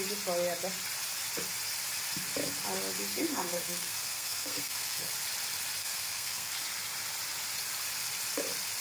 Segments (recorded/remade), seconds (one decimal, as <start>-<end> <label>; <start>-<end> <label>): 0.0-3.1 recorded; 3.1-5.1 remade; 5.1-5.8 recorded; 5.8-6.5 remade; 6.5-8.8 recorded